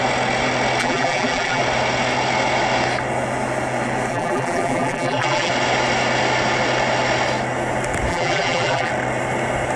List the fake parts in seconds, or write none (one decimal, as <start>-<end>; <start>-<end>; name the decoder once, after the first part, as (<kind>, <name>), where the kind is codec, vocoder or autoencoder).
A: 0.8-1.6 (vocoder, BigVGAN v2); 4.1-5.5; 8.1-8.9